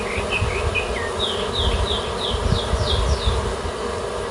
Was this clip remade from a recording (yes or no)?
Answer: no